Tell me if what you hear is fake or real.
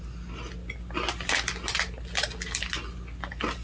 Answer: real